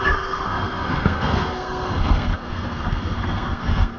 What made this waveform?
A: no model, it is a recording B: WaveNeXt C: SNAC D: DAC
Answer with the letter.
C